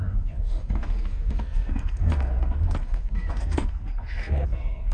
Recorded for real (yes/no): no